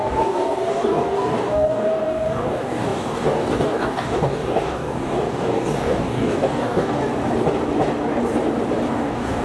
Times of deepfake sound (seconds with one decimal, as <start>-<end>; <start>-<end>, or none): 0.0-7.0; 8.9-9.4